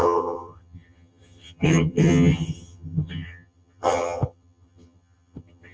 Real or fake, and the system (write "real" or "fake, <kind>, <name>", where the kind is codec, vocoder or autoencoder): fake, vocoder, HiFi-GAN